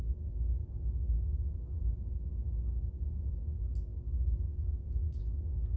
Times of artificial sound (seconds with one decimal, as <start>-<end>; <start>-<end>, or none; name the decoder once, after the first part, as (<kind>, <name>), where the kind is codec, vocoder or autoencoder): none